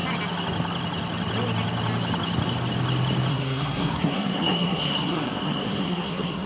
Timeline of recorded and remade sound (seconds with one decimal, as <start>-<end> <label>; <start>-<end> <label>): 0.0-3.3 recorded; 3.3-6.5 remade